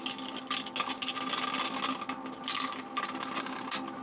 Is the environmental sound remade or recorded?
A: recorded